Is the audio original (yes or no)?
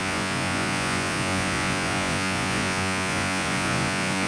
no